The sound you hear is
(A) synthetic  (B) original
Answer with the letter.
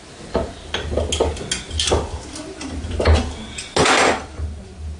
B